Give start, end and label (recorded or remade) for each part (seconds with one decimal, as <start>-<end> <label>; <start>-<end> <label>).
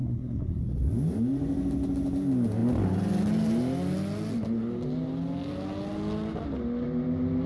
0.0-0.6 remade; 0.6-7.5 recorded